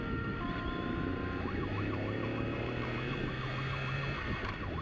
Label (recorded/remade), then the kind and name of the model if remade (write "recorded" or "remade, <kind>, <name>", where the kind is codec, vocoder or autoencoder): remade, vocoder, BigVGAN v2